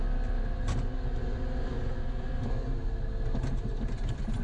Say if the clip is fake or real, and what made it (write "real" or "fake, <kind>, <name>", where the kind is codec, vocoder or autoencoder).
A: real